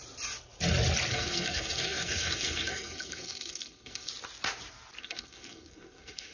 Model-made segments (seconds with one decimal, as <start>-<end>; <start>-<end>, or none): 1.1-4.1; 5.0-6.3